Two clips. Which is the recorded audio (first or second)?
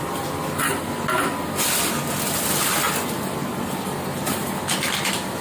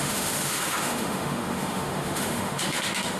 first